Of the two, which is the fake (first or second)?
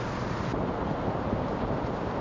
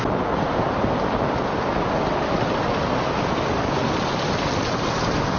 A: first